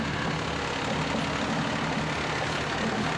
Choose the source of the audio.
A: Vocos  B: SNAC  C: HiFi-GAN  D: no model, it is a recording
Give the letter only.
D